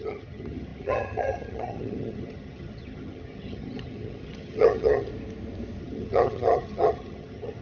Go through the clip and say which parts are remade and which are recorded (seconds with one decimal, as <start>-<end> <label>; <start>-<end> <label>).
0.0-5.1 remade; 5.1-5.8 recorded; 5.8-7.6 remade